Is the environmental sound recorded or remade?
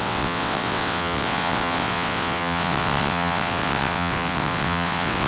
remade